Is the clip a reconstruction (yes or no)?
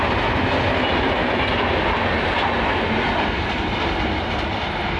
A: no